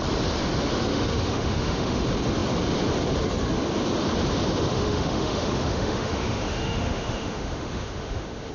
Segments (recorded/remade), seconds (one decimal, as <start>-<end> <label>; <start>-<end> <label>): 0.0-0.9 recorded; 0.9-2.0 remade; 2.0-4.7 recorded; 4.7-8.5 remade